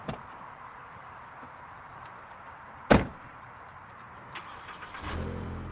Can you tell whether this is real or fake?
fake